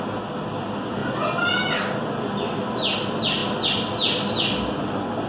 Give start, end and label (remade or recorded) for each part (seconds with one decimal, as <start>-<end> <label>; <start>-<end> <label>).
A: 0.0-5.3 recorded